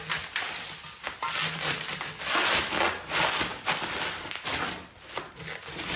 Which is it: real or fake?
real